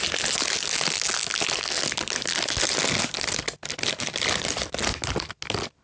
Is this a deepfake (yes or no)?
no